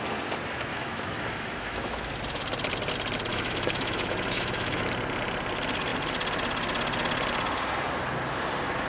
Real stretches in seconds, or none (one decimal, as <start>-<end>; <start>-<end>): 0.0-0.7; 2.2-3.3; 4.9-8.9